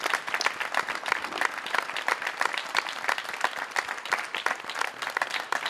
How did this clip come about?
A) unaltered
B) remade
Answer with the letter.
A